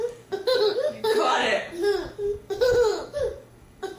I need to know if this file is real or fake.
fake